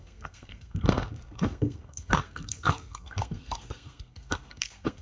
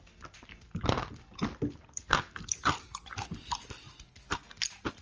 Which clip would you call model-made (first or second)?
first